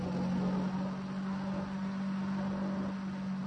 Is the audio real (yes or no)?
yes